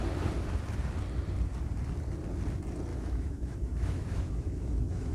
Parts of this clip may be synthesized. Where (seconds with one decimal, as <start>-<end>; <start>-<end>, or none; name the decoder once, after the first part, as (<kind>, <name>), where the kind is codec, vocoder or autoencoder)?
2.9-5.1 (autoencoder, DAC-VAE)